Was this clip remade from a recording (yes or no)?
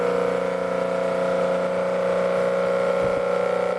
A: no